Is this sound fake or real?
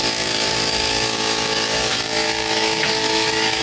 fake